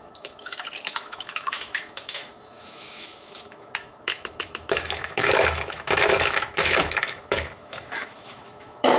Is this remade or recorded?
remade